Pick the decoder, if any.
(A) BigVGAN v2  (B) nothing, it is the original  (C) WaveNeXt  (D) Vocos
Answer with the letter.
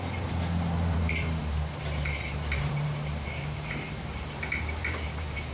A